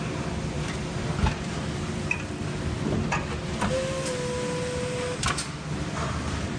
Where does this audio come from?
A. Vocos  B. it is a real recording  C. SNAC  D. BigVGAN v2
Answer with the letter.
B